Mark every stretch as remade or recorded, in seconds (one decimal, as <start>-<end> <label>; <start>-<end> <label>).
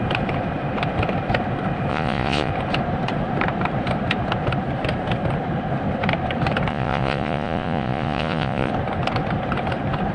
0.0-1.9 recorded; 1.9-2.5 remade; 2.5-6.7 recorded; 6.7-8.7 remade; 8.7-10.1 recorded